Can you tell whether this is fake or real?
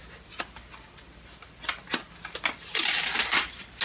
real